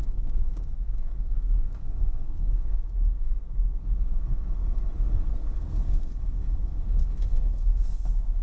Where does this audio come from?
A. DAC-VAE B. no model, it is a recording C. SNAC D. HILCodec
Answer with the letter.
C